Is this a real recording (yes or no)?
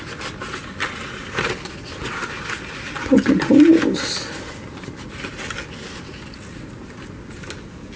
yes